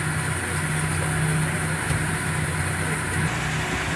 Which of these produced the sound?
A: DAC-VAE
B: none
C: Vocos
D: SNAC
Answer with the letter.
B